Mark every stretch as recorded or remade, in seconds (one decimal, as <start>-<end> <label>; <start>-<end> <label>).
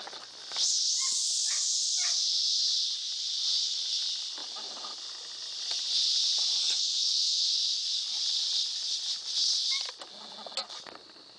0.0-6.6 recorded; 6.6-7.4 remade; 7.4-11.4 recorded